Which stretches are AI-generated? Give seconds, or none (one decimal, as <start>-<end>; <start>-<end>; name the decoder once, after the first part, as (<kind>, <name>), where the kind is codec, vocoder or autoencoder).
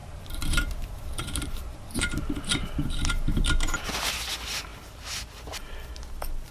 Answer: 0.0-3.9 (vocoder, BigVGAN v2)